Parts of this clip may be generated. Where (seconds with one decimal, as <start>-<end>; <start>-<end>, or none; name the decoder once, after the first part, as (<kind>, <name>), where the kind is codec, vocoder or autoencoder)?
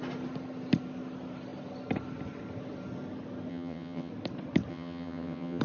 3.5-4.1 (vocoder, HiFi-GAN); 4.7-5.6